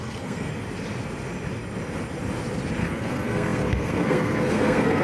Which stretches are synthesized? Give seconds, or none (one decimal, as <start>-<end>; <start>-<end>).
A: 0.0-0.5; 2.8-5.0